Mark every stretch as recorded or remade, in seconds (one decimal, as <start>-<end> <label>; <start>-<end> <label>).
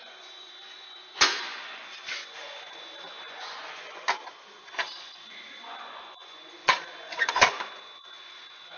0.0-8.8 remade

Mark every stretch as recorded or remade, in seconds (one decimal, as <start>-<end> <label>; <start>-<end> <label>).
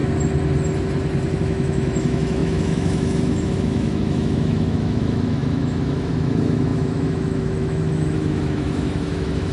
0.0-1.4 recorded; 1.4-9.5 remade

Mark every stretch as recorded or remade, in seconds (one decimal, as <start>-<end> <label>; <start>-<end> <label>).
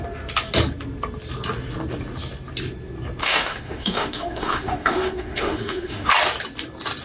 0.0-3.2 recorded; 3.2-6.1 remade; 6.1-7.0 recorded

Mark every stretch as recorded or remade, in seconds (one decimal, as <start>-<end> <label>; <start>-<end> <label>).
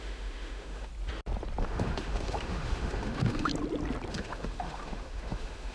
0.0-0.9 remade; 0.9-1.6 recorded; 1.6-3.5 remade; 3.5-4.1 recorded; 4.1-5.7 remade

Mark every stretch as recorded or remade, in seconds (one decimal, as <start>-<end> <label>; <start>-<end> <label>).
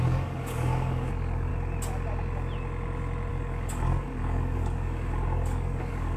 0.0-1.5 remade; 1.5-3.3 recorded; 3.3-6.2 remade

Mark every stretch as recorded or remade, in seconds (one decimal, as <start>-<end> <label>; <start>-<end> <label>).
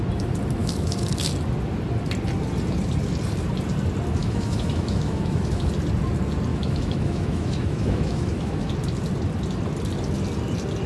0.0-0.6 recorded; 0.6-1.3 remade; 1.3-4.2 recorded; 4.2-5.7 remade; 5.7-6.5 recorded; 6.5-8.7 remade; 8.7-10.9 recorded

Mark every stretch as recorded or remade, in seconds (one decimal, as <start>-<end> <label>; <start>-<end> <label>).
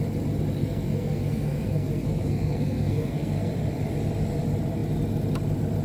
0.0-0.6 recorded; 0.6-3.5 remade; 3.5-5.8 recorded